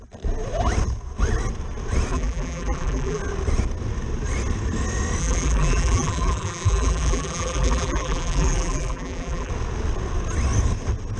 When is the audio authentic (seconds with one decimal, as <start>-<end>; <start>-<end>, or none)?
0.0-2.1; 3.2-5.2; 9.5-11.2